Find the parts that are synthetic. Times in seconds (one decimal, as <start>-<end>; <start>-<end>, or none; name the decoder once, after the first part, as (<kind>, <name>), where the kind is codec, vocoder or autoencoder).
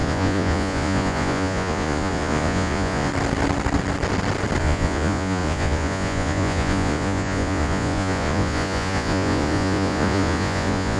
0.0-3.1 (vocoder, Vocos); 4.6-11.0